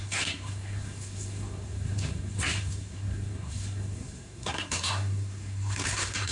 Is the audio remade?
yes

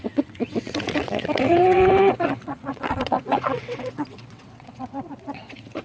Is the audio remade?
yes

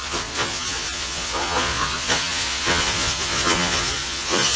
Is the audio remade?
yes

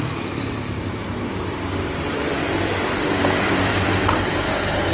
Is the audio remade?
yes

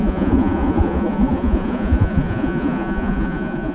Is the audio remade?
yes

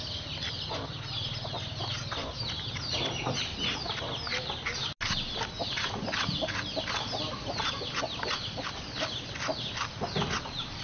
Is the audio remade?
no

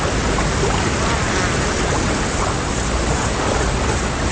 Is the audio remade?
no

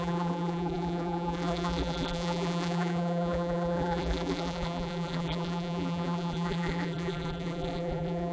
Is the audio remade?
yes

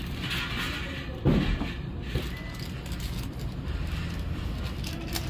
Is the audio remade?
no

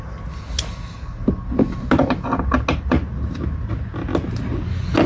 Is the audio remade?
no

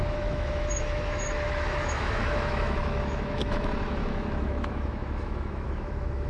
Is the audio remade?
yes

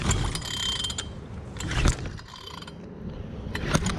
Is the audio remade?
no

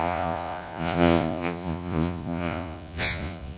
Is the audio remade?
yes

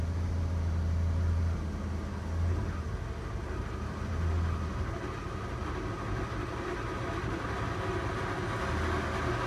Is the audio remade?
no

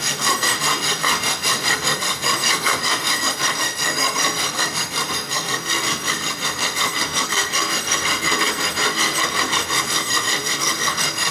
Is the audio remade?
yes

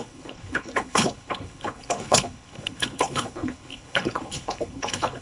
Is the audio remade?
yes